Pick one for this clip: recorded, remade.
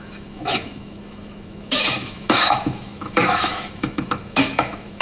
remade